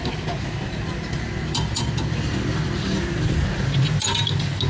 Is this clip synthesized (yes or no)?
no